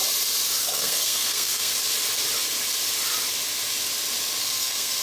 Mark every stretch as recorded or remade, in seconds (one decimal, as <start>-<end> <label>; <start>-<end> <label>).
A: 0.0-0.6 recorded; 0.6-1.7 remade; 1.7-4.4 recorded; 4.4-5.0 remade